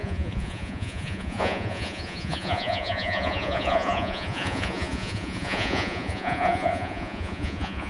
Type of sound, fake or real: fake